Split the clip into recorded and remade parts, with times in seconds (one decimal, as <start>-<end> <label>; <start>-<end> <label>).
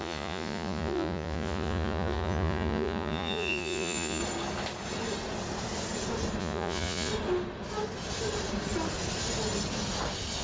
0.0-4.2 remade; 4.2-6.4 recorded; 6.4-7.1 remade; 7.1-10.4 recorded